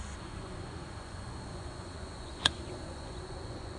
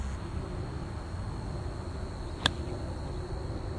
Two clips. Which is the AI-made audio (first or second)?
first